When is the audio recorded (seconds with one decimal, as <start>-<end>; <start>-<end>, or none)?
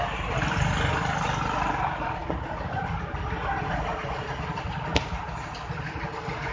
0.0-6.5